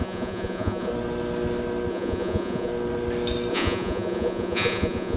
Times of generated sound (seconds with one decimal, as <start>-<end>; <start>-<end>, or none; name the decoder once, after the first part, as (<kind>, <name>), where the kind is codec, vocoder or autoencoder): 0.0-0.9 (vocoder, Vocos); 1.9-2.7; 3.5-5.2